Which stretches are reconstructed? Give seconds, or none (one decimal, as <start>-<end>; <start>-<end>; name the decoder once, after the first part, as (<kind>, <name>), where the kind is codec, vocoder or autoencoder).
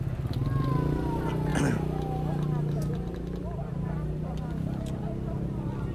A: none